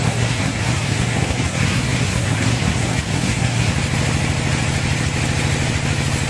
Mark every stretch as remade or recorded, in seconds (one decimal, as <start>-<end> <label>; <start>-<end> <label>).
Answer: 0.0-3.7 remade; 3.7-6.3 recorded